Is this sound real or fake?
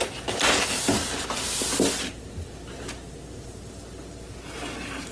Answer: real